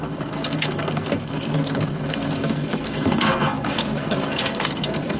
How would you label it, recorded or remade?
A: remade